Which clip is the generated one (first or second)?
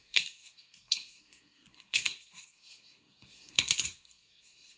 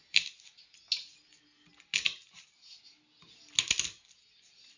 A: first